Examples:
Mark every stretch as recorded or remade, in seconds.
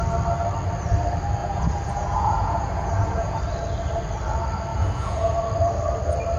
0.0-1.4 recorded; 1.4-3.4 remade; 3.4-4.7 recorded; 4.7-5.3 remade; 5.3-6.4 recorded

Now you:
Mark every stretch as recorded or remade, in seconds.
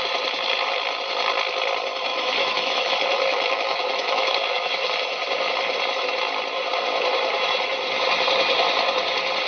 0.0-2.1 recorded; 2.1-2.9 remade; 2.9-3.3 recorded; 3.3-4.7 remade; 4.7-9.5 recorded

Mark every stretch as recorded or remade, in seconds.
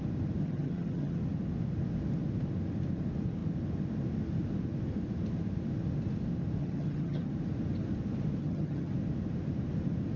0.0-0.4 recorded; 0.4-1.2 remade; 1.2-6.6 recorded; 6.6-7.3 remade; 7.3-8.4 recorded; 8.4-8.9 remade; 8.9-10.2 recorded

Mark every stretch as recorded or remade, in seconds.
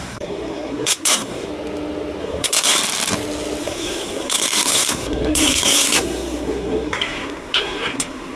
0.0-1.5 remade; 1.5-2.2 recorded; 2.2-2.8 remade; 2.8-3.6 recorded; 3.6-8.4 remade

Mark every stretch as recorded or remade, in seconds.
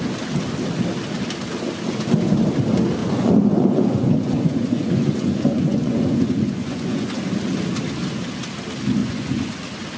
0.0-3.0 recorded; 3.0-7.1 remade; 7.1-9.0 recorded; 9.0-9.6 remade; 9.6-10.0 recorded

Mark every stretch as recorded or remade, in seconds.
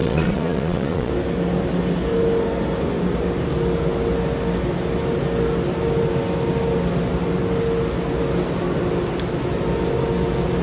0.0-1.1 remade; 1.1-10.6 recorded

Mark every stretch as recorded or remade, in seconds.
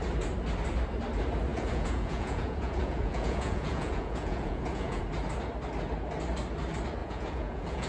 0.0-1.5 recorded; 1.5-5.0 remade; 5.0-7.0 recorded; 7.0-7.9 remade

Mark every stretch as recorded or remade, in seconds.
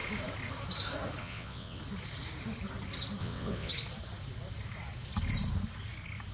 0.0-1.2 recorded; 1.2-1.8 remade; 1.8-3.2 recorded; 3.2-3.7 remade; 3.7-6.3 recorded